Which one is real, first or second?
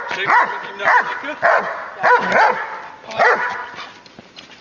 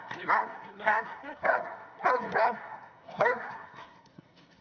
first